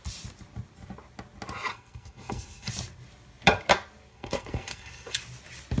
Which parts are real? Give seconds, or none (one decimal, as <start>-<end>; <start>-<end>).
0.0-1.7; 2.7-4.1; 5.2-5.8